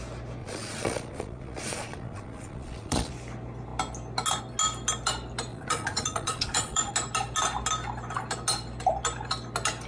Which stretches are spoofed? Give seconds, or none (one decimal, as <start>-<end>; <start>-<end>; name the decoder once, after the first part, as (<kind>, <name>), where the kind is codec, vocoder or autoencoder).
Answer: 0.4-3.1 (vocoder, Vocos); 5.5-6.9